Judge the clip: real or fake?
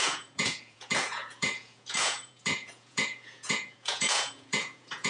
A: fake